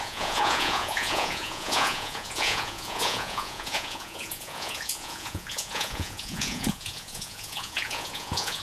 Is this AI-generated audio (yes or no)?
yes